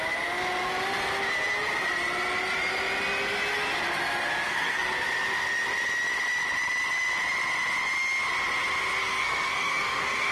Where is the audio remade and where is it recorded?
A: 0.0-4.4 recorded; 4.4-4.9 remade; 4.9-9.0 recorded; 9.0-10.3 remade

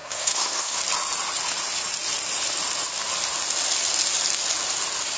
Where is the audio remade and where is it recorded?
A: 0.0-0.8 remade; 0.8-5.2 recorded

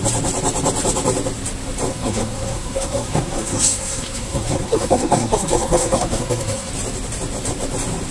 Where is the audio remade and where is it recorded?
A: 0.0-1.9 recorded; 1.9-6.7 remade; 6.7-8.1 recorded

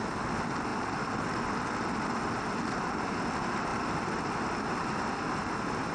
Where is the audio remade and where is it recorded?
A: 0.0-5.9 recorded

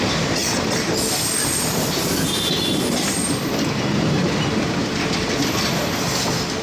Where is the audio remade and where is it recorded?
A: 0.0-6.6 recorded

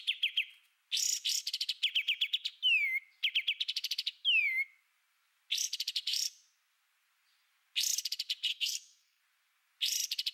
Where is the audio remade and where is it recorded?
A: 0.0-8.5 recorded; 8.5-9.2 remade; 9.2-10.3 recorded